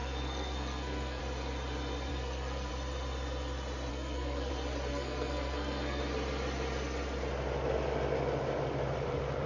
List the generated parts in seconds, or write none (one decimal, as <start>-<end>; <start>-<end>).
0.0-1.2; 2.1-2.7; 3.9-4.5; 4.9-6.0